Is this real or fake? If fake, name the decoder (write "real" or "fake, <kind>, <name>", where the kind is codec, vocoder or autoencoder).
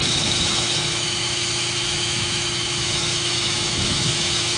fake, autoencoder, DAC-VAE